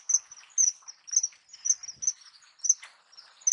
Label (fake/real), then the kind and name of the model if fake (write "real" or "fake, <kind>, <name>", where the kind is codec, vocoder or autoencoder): real